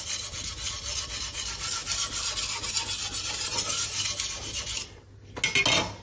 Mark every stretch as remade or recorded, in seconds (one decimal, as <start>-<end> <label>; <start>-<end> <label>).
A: 0.0-3.2 recorded; 3.2-4.7 remade; 4.7-6.0 recorded